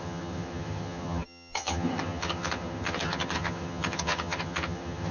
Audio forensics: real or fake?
fake